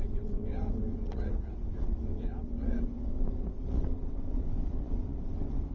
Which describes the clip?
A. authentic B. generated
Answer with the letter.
B